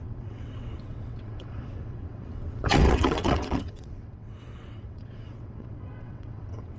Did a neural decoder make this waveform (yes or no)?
yes